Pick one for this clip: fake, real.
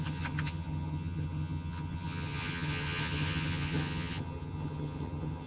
fake